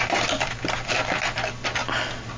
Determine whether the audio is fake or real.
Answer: real